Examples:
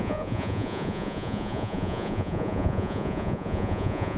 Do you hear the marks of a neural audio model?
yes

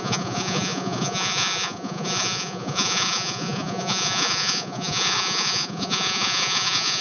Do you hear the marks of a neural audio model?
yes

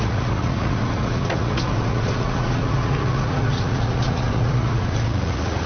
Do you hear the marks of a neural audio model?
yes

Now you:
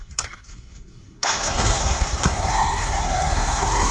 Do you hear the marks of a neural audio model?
yes